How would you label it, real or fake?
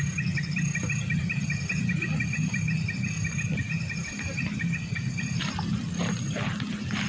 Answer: real